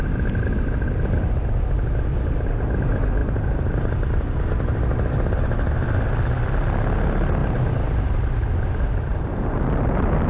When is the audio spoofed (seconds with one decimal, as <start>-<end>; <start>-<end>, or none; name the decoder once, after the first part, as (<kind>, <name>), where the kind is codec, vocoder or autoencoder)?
3.2-4.4 (vocoder, BigVGAN v2); 7.4-8.3; 9.1-9.6